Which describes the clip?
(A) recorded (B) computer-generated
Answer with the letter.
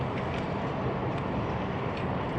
A